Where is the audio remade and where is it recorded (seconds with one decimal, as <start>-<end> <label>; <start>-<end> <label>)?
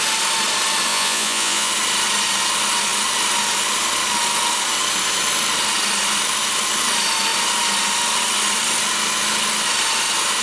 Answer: 0.0-0.9 recorded; 0.9-1.7 remade; 1.7-10.4 recorded